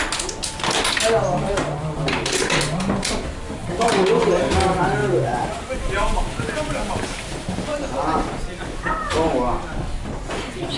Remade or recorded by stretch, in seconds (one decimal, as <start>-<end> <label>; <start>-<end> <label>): 0.0-3.6 recorded; 3.6-4.1 remade; 4.1-5.0 recorded; 5.0-6.2 remade; 6.2-10.8 recorded